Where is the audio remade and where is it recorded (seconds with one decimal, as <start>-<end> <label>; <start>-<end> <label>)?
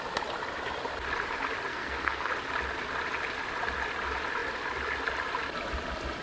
0.0-1.7 recorded; 1.7-2.3 remade; 2.3-6.2 recorded